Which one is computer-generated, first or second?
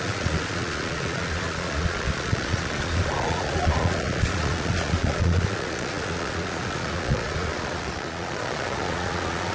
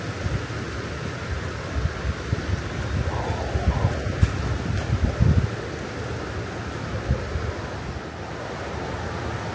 first